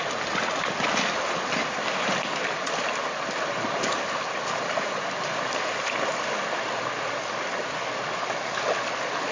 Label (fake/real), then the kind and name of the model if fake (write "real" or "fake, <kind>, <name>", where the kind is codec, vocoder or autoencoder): real